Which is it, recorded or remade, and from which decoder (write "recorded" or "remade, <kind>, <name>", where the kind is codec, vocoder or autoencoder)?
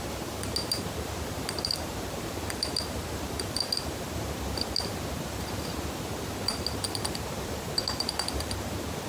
remade, vocoder, BigVGAN v2